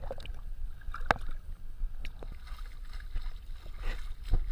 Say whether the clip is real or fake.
real